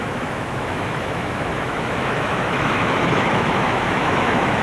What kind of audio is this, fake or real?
fake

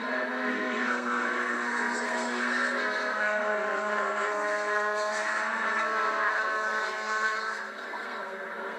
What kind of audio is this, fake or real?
fake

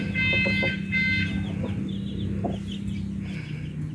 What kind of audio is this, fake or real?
real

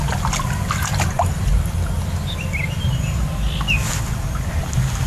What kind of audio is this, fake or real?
real